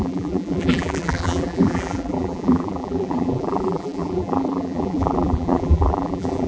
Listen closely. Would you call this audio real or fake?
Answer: fake